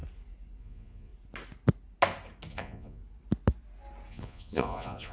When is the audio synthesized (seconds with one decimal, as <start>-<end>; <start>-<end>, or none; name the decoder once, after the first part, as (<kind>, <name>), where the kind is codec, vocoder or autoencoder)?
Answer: 0.6-1.1 (vocoder, Vocos); 2.5-3.0; 4.1-5.1